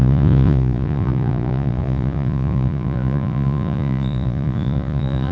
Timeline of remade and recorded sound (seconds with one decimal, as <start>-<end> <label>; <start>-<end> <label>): 0.0-5.3 remade